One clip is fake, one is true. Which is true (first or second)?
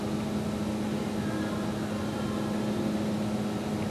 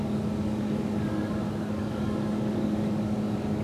first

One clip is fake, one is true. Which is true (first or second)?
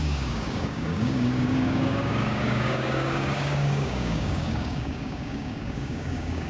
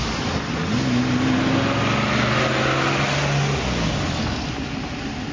second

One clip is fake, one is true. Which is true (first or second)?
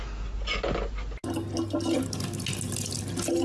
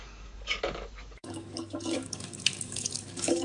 first